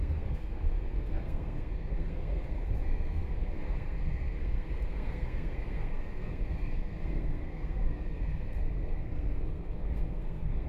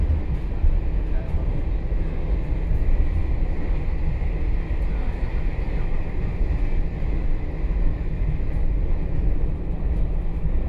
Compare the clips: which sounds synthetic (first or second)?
first